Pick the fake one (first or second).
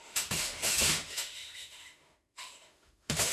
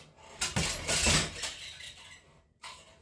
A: first